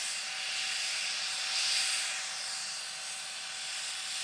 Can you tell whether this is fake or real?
real